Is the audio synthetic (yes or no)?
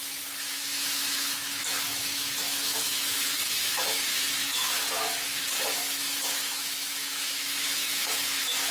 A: yes